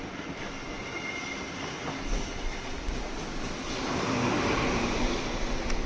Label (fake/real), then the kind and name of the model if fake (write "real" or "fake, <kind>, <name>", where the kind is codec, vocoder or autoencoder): real